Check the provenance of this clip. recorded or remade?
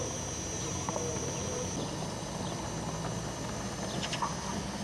recorded